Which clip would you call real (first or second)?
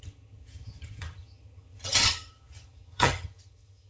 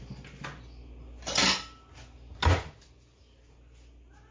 second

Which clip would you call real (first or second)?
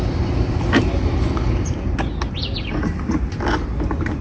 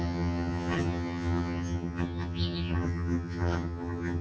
first